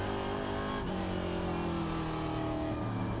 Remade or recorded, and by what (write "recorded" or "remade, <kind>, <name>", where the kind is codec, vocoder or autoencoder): recorded